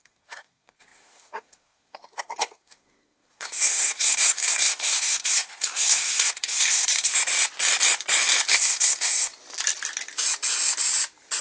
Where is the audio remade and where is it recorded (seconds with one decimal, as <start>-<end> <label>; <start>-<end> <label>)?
0.0-7.1 remade; 7.1-8.5 recorded; 8.5-9.3 remade; 9.3-11.4 recorded